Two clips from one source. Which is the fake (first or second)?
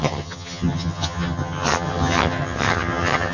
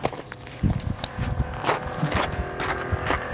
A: first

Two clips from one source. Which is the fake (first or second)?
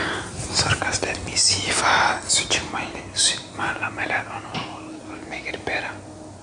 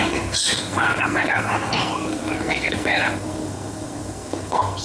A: second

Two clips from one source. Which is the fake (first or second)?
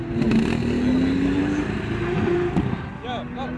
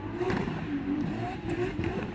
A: second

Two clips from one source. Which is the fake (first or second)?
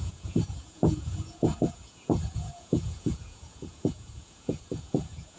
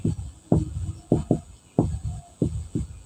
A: first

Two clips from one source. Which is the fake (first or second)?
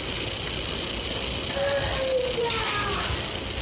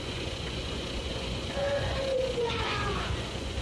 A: second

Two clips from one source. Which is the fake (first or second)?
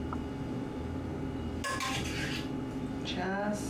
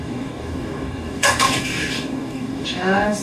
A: second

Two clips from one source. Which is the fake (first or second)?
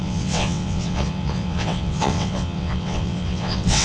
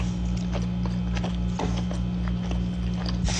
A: first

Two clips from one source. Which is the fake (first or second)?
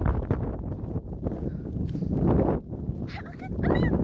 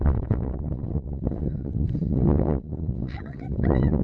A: second